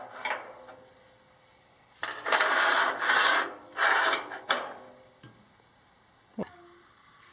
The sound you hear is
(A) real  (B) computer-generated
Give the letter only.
A